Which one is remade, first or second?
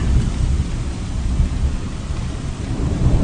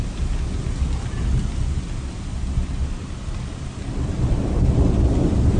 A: first